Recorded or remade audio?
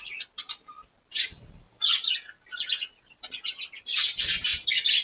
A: remade